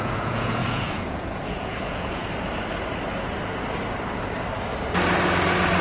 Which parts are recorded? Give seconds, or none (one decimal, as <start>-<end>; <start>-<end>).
2.2-5.8